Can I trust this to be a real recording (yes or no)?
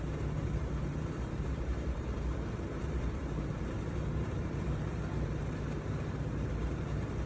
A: no